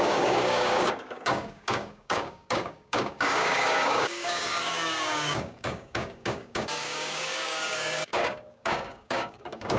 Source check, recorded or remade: remade